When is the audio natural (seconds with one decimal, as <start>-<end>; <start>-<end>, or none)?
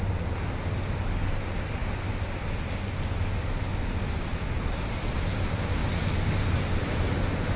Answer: 0.0-5.8